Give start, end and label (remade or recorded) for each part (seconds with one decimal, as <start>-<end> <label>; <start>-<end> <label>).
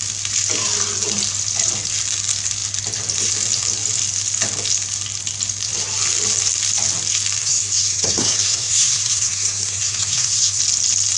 0.0-7.4 recorded; 7.4-10.6 remade; 10.6-11.2 recorded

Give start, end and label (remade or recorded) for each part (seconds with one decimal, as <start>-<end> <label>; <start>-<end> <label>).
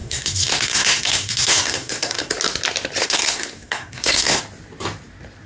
0.0-2.3 remade; 2.3-3.0 recorded; 3.0-4.4 remade; 4.4-5.5 recorded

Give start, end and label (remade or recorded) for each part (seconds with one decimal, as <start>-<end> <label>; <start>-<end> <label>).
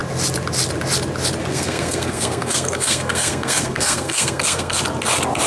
0.0-1.5 recorded; 1.5-4.8 remade; 4.8-5.5 recorded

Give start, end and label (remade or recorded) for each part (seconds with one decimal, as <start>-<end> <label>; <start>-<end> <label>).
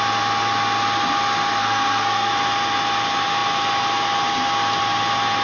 0.0-1.6 recorded; 1.6-2.3 remade; 2.3-5.4 recorded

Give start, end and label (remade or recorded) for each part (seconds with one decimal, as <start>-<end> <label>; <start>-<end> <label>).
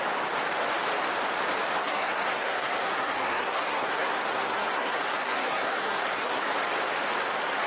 0.0-1.8 recorded; 1.8-6.4 remade; 6.4-7.7 recorded